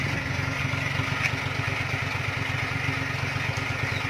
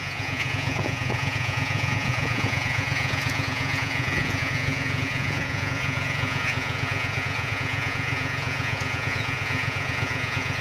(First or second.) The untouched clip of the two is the first